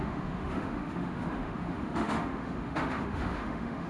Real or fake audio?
fake